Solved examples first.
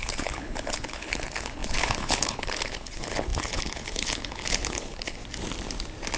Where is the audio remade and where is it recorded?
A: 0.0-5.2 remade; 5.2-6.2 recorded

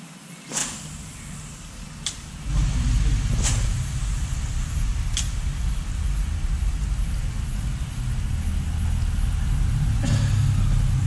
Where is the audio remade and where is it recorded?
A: 0.0-11.1 recorded

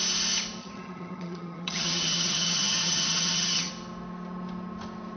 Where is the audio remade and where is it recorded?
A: 0.0-0.6 recorded; 0.6-3.7 remade; 3.7-5.2 recorded

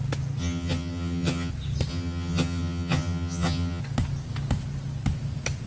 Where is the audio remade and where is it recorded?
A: 0.0-0.4 recorded; 0.4-1.5 remade; 1.5-1.9 recorded; 1.9-3.8 remade; 3.8-5.7 recorded

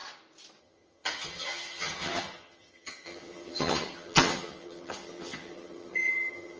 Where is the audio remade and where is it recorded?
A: 0.0-0.6 recorded; 0.6-6.6 remade

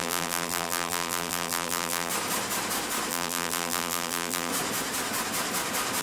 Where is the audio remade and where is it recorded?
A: 0.0-2.1 remade; 2.1-3.1 recorded; 3.1-4.5 remade; 4.5-6.0 recorded